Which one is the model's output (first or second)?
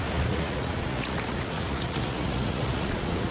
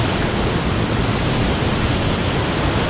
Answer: first